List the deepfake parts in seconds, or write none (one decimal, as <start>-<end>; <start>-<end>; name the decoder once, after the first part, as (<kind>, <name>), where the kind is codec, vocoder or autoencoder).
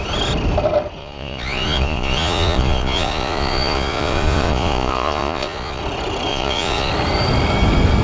1.0-5.8 (vocoder, Vocos); 6.3-6.9